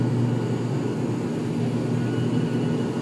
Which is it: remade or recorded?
recorded